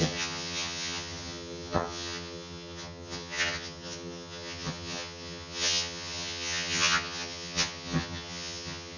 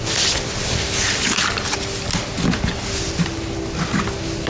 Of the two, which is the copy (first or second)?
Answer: first